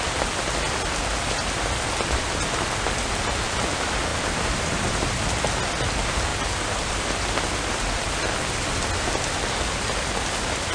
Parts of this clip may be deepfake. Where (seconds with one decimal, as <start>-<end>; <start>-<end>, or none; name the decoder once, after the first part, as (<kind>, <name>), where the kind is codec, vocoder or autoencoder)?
4.1-5.1 (vocoder, BigVGAN v2); 6.3-7.0